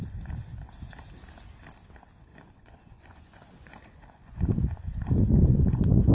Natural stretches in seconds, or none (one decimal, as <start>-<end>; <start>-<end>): 0.0-2.3

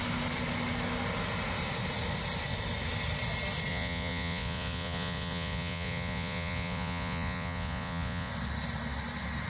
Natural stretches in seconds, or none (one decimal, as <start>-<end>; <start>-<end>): 0.0-3.7; 8.3-9.5

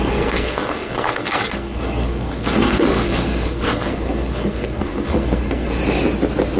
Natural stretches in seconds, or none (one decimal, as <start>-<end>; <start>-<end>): 5.8-6.6

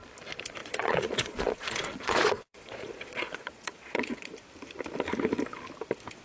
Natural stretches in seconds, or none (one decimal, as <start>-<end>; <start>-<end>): 0.0-0.6; 4.3-6.2

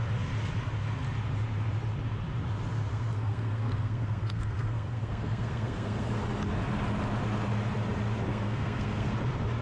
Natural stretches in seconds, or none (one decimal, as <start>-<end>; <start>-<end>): 0.0-2.9; 6.2-8.3; 9.1-9.6

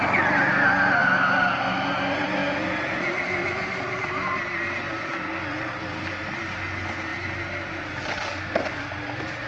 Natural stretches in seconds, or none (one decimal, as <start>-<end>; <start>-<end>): 0.0-7.1; 8.0-9.5

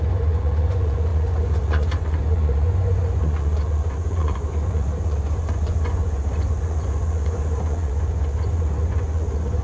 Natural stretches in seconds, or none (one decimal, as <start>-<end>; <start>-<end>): none